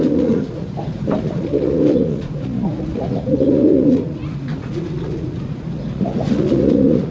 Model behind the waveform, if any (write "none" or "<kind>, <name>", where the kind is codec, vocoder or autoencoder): vocoder, Vocos